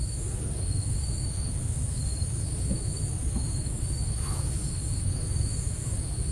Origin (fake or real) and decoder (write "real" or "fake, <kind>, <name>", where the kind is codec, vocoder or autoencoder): fake, autoencoder, DAC-VAE